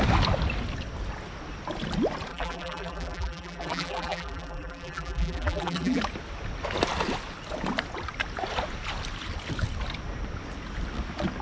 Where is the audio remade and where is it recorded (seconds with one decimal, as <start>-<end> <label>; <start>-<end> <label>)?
0.0-2.3 recorded; 2.3-6.0 remade; 6.0-11.4 recorded

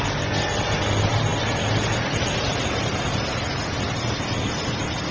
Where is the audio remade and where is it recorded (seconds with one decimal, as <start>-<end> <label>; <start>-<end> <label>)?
0.0-5.1 recorded

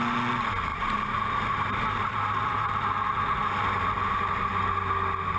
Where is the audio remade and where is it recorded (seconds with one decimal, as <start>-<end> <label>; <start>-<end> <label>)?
0.0-0.7 recorded; 0.7-2.7 remade; 2.7-5.4 recorded

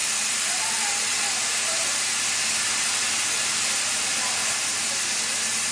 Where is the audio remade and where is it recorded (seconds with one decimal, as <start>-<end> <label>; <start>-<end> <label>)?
0.0-1.3 remade; 1.3-5.7 recorded

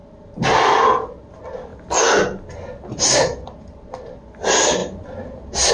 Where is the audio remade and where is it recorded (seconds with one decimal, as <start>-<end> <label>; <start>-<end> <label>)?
0.0-1.7 remade; 1.7-3.1 recorded; 3.1-4.8 remade; 4.8-5.7 recorded

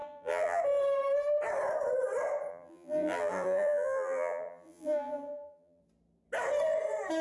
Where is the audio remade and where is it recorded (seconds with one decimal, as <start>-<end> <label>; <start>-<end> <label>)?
0.0-0.6 remade; 0.6-2.5 recorded; 2.5-5.8 remade; 5.8-7.2 recorded

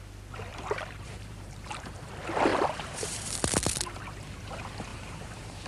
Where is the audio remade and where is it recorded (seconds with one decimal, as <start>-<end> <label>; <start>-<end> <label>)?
0.0-0.5 recorded; 0.5-2.1 remade; 2.1-2.5 recorded; 2.5-3.3 remade; 3.3-4.9 recorded; 4.9-5.7 remade

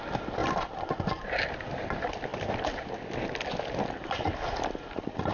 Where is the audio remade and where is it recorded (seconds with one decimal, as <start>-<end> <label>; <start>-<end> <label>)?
0.0-5.3 recorded